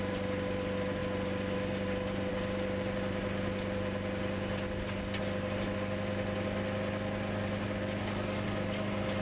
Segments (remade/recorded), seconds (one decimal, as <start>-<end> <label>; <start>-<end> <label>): 0.0-9.2 recorded